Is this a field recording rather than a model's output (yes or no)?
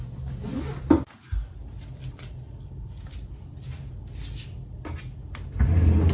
yes